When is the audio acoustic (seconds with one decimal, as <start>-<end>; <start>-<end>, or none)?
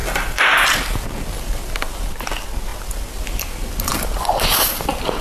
0.0-5.2